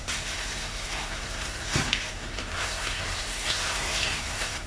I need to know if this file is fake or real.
fake